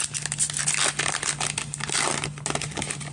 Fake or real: real